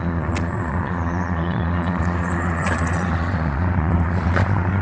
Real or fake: fake